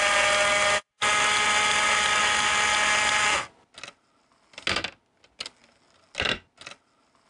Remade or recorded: recorded